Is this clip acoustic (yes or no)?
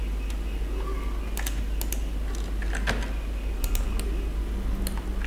yes